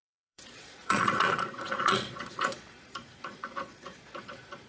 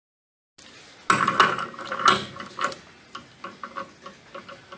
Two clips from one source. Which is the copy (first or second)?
first